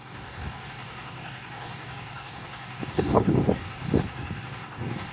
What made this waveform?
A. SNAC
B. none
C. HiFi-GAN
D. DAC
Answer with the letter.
D